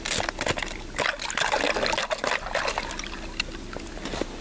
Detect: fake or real real